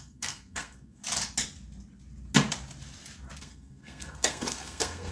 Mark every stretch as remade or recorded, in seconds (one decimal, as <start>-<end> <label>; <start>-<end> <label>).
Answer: 0.0-1.0 remade; 1.0-3.4 recorded; 3.4-5.1 remade